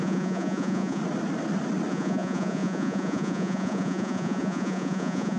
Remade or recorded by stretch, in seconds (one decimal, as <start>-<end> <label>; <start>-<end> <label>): 0.0-1.0 remade; 1.0-1.9 recorded; 1.9-5.4 remade